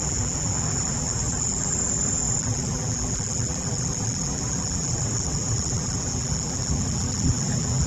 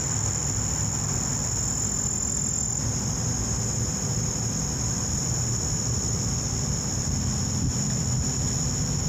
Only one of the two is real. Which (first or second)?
second